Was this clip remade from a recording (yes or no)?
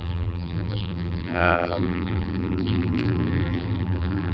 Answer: yes